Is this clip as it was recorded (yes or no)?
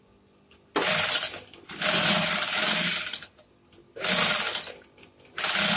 yes